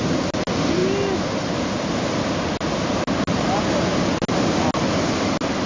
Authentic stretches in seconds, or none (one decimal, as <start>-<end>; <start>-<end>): 0.0-5.7